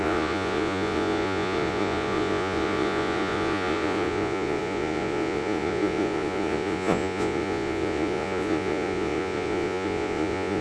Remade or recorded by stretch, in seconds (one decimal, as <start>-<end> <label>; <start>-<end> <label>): 0.0-10.6 remade